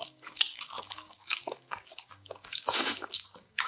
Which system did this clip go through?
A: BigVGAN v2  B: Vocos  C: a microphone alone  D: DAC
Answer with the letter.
D